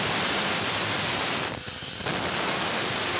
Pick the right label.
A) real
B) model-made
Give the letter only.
B